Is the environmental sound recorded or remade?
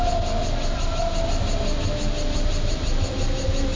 recorded